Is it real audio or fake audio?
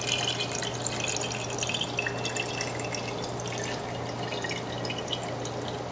real